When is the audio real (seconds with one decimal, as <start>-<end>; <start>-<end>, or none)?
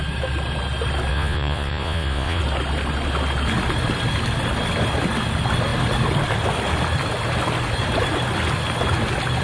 0.0-1.1; 2.4-9.4